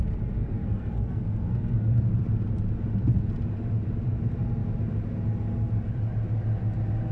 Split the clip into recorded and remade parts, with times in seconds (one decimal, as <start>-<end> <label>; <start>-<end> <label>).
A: 0.0-0.4 recorded; 0.4-2.1 remade; 2.1-7.1 recorded